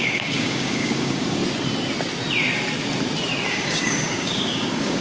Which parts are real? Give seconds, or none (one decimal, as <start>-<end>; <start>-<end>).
1.4-3.5